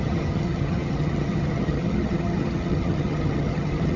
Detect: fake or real fake